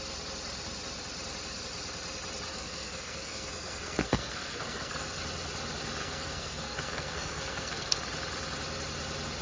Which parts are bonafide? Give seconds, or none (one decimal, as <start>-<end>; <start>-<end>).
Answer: 0.0-2.5; 5.2-6.0; 8.0-9.4